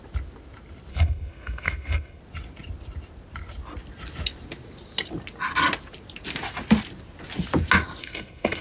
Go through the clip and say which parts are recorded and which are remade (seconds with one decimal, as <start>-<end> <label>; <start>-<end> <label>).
0.0-0.9 recorded; 0.9-2.2 remade; 2.2-8.0 recorded; 8.0-8.6 remade